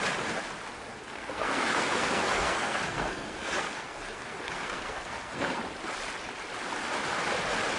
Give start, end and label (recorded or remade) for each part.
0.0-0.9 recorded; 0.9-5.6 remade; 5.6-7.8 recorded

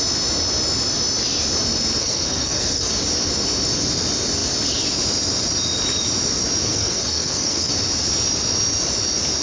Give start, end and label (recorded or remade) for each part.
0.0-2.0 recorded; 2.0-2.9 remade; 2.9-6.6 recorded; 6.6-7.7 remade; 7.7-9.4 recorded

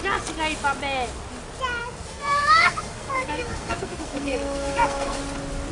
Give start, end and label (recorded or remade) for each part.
0.0-1.8 recorded; 1.8-5.2 remade; 5.2-5.7 recorded

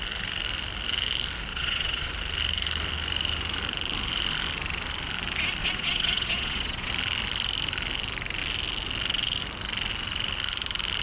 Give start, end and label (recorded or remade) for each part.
0.0-1.5 recorded; 1.5-2.1 remade; 2.1-5.6 recorded; 5.6-6.9 remade; 6.9-11.0 recorded

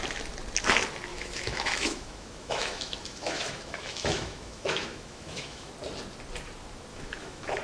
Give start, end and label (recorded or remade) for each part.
0.0-1.1 recorded; 1.1-5.7 remade; 5.7-6.9 recorded; 6.9-7.6 remade

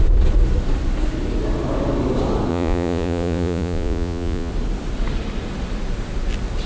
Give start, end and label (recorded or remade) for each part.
0.0-2.5 recorded; 2.5-4.5 remade; 4.5-6.7 recorded

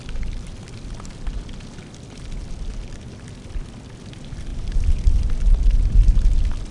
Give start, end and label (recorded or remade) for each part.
0.0-6.7 recorded